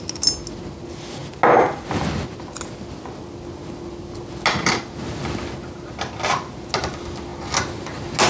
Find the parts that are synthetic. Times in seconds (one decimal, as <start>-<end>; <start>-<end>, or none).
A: none